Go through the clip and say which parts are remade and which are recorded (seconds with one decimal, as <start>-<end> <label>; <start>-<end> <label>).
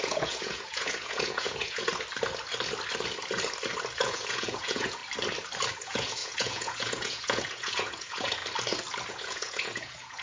0.0-1.9 remade; 1.9-4.0 recorded; 4.0-5.0 remade; 5.0-5.8 recorded; 5.8-8.4 remade; 8.4-9.1 recorded; 9.1-10.2 remade